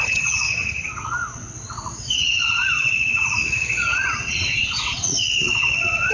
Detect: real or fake fake